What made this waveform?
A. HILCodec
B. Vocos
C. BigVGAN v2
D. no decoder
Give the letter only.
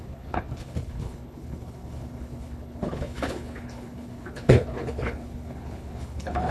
A